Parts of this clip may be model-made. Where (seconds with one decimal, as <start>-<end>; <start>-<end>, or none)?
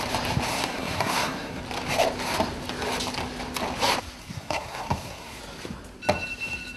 0.5-1.6; 4.2-5.4